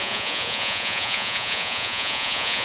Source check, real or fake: fake